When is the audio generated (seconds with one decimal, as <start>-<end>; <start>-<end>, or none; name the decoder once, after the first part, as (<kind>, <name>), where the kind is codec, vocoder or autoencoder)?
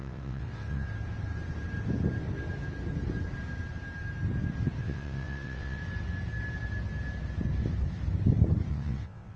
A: 0.0-0.9 (vocoder, WaveNeXt); 4.8-5.8; 8.7-9.4